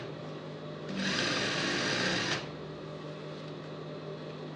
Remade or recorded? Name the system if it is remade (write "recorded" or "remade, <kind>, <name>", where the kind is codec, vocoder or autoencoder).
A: recorded